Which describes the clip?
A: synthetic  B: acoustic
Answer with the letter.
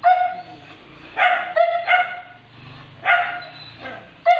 B